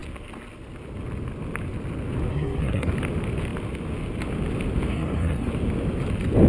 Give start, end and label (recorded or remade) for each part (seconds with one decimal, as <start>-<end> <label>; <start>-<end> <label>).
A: 0.0-2.3 recorded; 2.3-2.9 remade; 2.9-4.9 recorded; 4.9-5.5 remade; 5.5-6.5 recorded